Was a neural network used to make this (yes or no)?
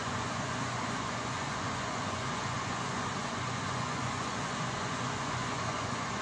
yes